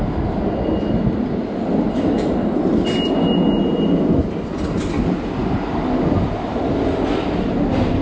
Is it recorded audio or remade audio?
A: recorded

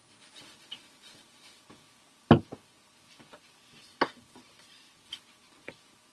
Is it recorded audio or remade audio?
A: recorded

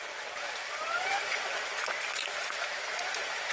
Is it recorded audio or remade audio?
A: remade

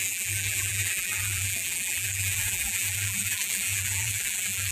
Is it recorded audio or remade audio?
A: remade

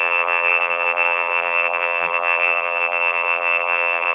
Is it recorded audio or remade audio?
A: remade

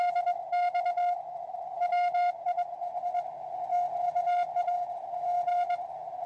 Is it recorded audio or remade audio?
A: recorded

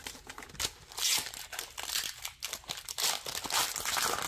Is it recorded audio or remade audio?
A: recorded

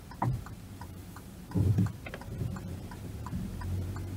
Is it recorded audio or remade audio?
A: remade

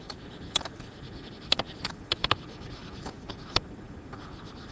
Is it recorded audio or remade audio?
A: remade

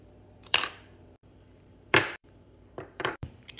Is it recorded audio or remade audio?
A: remade